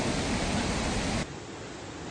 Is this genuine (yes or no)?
yes